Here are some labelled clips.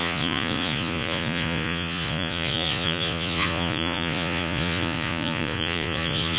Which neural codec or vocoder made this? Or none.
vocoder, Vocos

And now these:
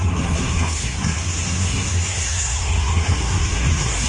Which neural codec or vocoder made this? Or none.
codec, SNAC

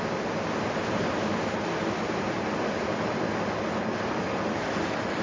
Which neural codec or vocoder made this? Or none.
none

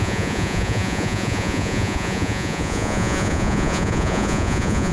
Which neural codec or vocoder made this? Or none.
vocoder, Vocos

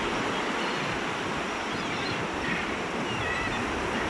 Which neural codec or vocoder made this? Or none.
none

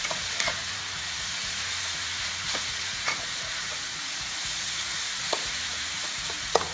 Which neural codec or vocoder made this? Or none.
vocoder, Vocos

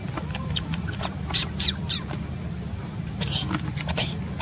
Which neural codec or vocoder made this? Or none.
none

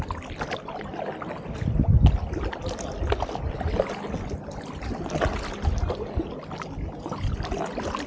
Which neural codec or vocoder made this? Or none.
none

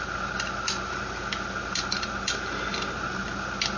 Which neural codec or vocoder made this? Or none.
none